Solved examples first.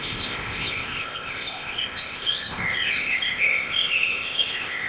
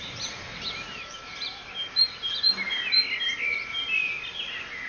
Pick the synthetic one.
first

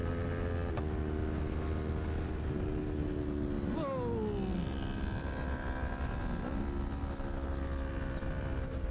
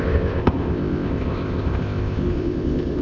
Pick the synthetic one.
second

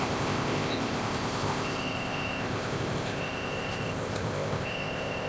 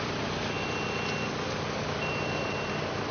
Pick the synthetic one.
first